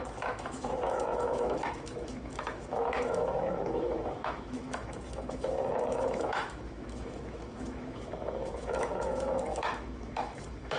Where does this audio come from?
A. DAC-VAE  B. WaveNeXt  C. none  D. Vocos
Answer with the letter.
A